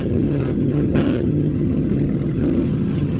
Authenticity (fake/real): fake